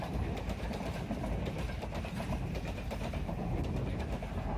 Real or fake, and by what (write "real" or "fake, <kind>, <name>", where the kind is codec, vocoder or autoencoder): fake, vocoder, BigVGAN v2